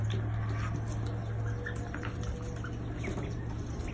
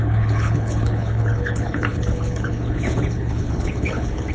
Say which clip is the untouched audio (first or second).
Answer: first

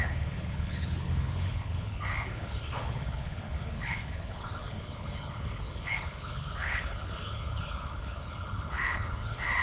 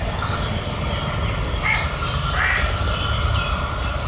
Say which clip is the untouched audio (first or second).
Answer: second